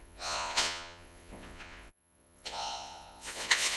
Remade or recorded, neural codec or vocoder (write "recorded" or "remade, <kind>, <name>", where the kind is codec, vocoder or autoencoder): remade, vocoder, Vocos